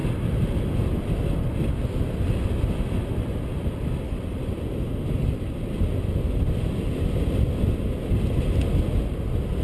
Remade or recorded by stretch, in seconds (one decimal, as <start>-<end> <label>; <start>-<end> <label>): 0.0-9.6 recorded